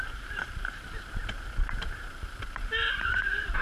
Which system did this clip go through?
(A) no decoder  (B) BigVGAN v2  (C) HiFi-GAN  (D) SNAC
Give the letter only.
B